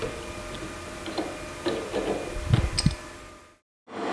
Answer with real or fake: real